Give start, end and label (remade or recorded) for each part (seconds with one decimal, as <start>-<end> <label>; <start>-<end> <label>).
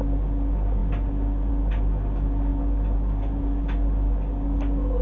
0.0-5.0 recorded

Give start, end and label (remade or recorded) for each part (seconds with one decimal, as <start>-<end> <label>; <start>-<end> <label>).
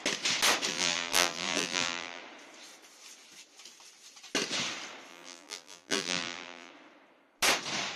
0.0-0.7 recorded; 0.7-2.2 remade; 2.2-5.1 recorded; 5.1-6.7 remade; 6.7-8.0 recorded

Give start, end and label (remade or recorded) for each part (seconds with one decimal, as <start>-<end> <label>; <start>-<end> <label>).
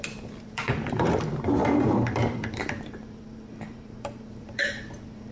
0.0-5.3 remade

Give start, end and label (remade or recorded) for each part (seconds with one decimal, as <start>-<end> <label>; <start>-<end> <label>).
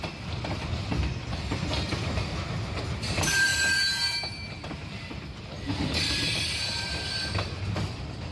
0.0-8.3 remade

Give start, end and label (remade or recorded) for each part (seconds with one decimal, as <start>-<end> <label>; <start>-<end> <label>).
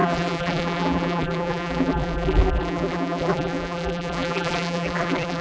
0.0-5.4 remade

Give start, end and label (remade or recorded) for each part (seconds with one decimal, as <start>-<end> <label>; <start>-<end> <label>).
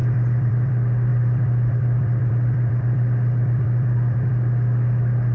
0.0-0.7 remade; 0.7-1.1 recorded; 1.1-4.3 remade; 4.3-5.3 recorded